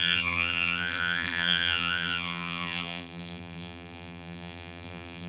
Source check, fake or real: fake